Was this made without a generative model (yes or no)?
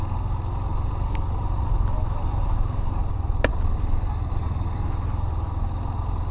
yes